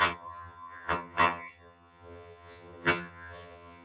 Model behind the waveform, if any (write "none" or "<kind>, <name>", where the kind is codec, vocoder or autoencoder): vocoder, HiFi-GAN